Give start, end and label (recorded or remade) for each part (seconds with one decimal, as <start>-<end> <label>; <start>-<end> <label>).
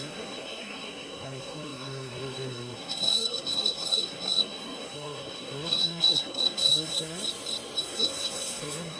0.0-7.2 remade; 7.2-7.8 recorded; 7.8-9.0 remade